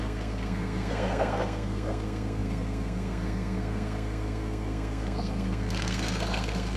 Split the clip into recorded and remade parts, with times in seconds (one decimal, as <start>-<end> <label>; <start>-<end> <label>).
0.0-6.8 remade